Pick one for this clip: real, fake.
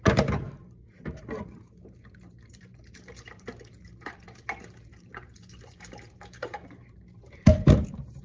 fake